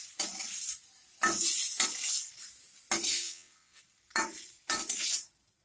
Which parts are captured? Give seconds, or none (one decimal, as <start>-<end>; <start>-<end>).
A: 0.0-3.1; 3.8-5.6